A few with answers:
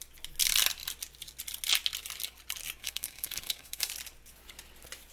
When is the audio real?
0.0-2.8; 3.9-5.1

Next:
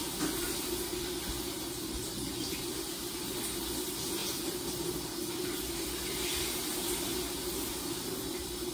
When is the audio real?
0.0-8.7

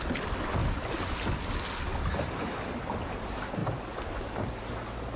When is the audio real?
0.0-0.6; 1.2-1.9; 2.8-5.2